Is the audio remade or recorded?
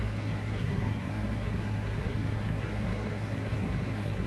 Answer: remade